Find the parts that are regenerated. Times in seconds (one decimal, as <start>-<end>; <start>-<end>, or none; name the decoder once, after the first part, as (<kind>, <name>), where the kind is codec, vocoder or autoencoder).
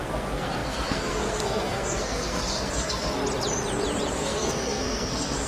0.0-3.2 (codec, SNAC); 4.1-5.5